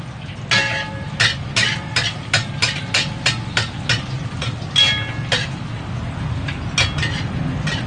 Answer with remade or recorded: recorded